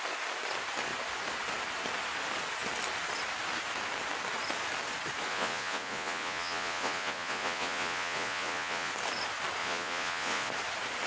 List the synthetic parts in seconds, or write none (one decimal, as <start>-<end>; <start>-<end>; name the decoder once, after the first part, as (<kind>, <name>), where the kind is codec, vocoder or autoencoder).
5.3-8.9 (vocoder, Vocos); 9.6-10.5